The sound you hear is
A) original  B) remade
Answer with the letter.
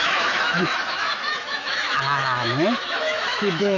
B